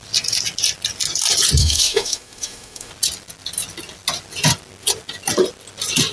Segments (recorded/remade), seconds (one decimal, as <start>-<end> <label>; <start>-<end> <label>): 0.0-1.6 recorded; 1.6-2.9 remade; 2.9-6.1 recorded